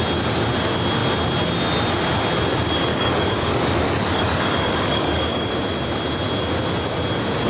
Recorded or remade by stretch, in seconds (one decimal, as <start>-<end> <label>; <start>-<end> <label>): 0.0-2.9 recorded; 2.9-5.5 remade; 5.5-7.5 recorded